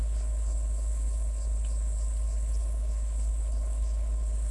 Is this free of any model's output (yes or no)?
no